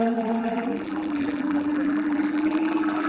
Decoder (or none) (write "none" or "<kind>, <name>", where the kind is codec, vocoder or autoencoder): vocoder, BigVGAN v2